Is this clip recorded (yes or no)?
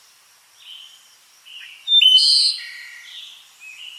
yes